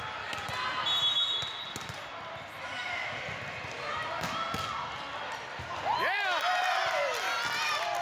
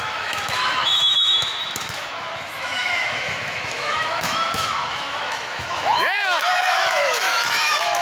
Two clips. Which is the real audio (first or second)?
first